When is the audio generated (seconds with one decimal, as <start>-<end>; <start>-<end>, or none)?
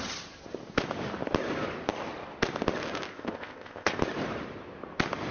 3.1-4.0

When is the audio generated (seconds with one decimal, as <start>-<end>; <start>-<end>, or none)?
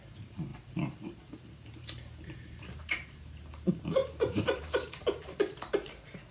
0.0-6.3